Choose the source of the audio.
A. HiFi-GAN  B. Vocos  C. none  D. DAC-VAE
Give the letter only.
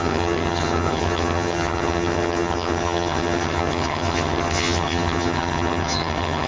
A